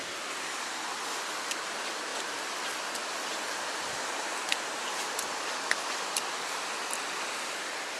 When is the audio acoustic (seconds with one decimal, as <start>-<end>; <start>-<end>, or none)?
0.0-8.0

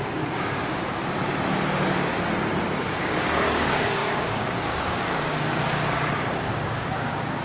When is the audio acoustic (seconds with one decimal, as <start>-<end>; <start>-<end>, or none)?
1.0-3.0

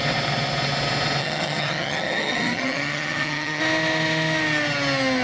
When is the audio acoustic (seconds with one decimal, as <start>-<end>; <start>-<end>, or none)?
0.0-1.2; 3.6-5.2

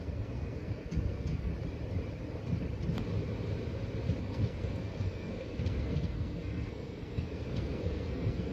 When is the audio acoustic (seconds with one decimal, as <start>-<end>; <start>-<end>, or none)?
1.5-4.2

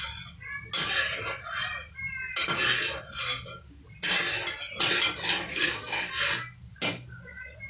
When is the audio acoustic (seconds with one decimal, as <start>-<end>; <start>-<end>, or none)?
0.0-5.5; 6.1-7.7

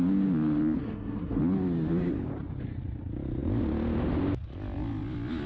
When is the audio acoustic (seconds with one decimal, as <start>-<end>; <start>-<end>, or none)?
0.0-0.8; 1.4-5.5

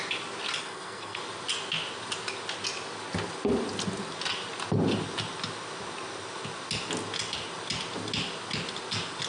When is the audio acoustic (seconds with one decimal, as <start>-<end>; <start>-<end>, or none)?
0.0-0.6; 1.2-9.3